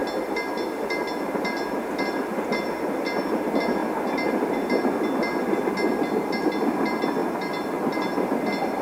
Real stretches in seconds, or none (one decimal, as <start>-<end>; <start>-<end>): 0.0-8.8